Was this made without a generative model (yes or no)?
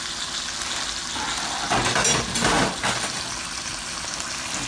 yes